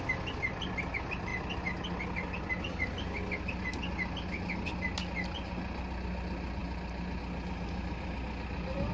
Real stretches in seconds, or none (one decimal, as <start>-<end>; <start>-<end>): 0.0-8.9